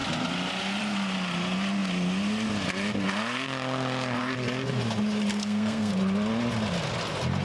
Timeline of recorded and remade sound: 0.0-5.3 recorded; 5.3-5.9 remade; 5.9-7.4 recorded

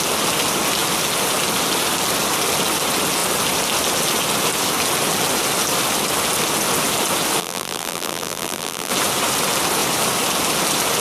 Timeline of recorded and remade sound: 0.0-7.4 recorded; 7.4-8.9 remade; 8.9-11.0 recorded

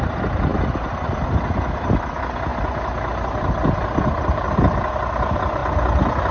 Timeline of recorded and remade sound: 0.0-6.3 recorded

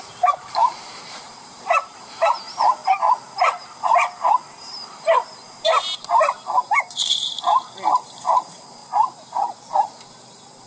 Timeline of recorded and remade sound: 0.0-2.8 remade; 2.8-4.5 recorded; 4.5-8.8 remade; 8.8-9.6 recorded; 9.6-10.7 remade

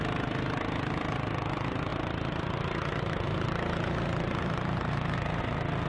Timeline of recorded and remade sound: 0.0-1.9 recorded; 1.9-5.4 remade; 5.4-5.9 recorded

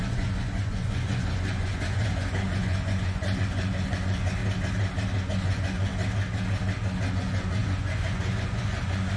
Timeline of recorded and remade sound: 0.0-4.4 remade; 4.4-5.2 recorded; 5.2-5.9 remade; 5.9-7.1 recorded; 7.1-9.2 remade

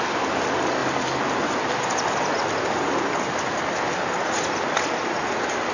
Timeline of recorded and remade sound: 0.0-5.7 recorded